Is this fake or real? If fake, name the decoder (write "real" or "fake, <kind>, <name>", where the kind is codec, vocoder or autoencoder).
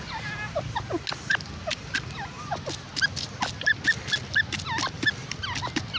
real